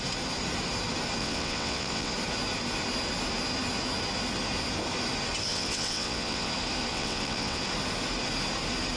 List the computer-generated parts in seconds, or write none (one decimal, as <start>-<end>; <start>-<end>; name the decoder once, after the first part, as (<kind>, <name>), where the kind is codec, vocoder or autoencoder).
1.2-2.1 (vocoder, WaveNeXt); 5.5-6.5; 6.9-7.6